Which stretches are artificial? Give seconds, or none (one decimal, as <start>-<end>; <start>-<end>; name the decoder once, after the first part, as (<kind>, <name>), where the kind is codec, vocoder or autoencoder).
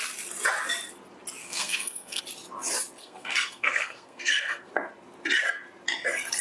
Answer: 1.4-2.2 (codec, SNAC); 3.0-4.7